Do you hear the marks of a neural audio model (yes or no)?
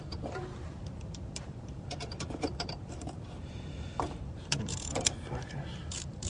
yes